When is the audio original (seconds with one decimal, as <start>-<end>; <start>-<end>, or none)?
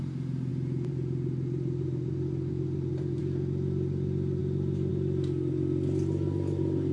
0.0-0.5; 3.2-6.9